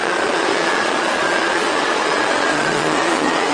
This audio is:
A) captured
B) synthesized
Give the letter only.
B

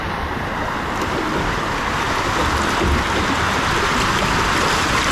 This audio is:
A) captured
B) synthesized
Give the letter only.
A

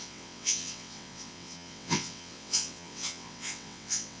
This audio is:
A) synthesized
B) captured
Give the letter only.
A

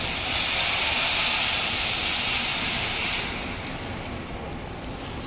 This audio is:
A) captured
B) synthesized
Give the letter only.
B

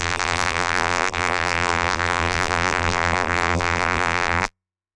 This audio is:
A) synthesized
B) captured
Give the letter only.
A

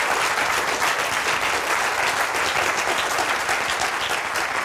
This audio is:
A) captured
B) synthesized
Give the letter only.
A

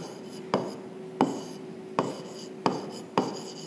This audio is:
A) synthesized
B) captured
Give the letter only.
B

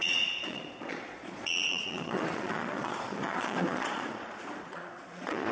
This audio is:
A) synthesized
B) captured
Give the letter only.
A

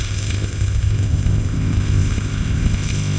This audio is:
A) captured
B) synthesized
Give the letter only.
B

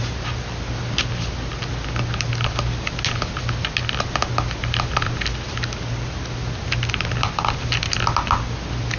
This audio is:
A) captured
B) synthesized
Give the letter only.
A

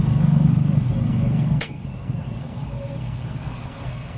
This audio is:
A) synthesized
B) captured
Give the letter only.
A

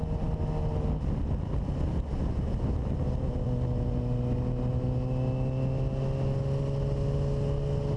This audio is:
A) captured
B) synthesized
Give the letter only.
A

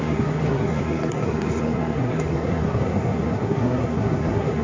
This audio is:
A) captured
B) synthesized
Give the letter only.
B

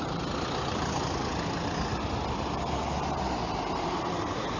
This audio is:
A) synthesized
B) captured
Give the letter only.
B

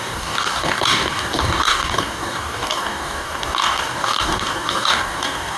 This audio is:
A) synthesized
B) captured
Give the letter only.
A